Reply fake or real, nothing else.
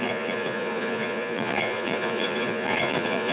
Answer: fake